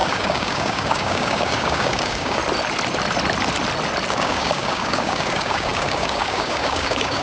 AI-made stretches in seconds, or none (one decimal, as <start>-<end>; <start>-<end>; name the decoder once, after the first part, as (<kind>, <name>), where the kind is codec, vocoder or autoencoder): 0.0-2.4 (codec, DAC); 4.1-7.2